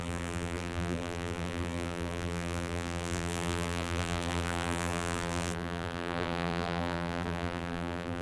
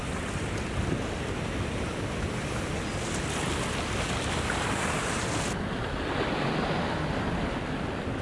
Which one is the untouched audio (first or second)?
second